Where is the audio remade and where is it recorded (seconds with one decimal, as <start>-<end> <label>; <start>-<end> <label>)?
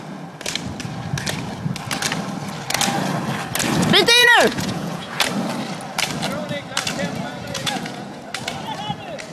0.0-4.2 recorded; 4.2-5.2 remade; 5.2-7.3 recorded; 7.3-8.2 remade; 8.2-9.3 recorded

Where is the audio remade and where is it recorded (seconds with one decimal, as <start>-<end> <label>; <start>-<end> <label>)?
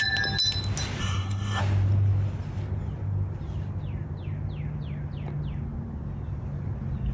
0.0-1.0 recorded; 1.0-1.6 remade; 1.6-7.1 recorded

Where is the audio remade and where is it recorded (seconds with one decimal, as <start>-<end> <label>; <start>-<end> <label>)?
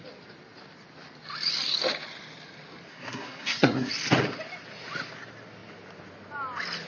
0.0-2.9 recorded; 2.9-3.9 remade; 3.9-6.9 recorded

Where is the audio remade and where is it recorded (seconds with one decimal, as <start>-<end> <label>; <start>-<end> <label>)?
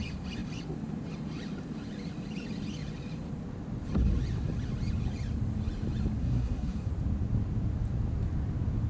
0.0-6.2 recorded; 6.2-6.9 remade; 6.9-8.9 recorded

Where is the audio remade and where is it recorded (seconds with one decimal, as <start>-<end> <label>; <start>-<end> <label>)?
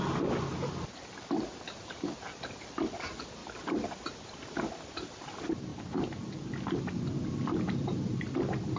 0.0-8.8 recorded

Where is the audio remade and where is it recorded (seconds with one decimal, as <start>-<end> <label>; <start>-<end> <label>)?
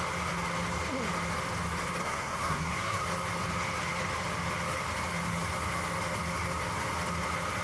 0.0-2.0 recorded; 2.0-3.0 remade; 3.0-7.6 recorded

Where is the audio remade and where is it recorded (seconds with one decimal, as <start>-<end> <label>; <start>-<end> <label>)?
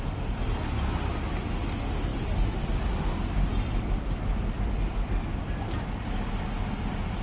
0.0-2.1 recorded; 2.1-3.1 remade; 3.1-3.5 recorded; 3.5-5.2 remade; 5.2-7.2 recorded